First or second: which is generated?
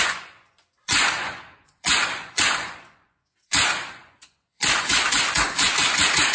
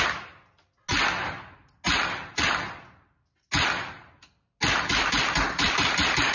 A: first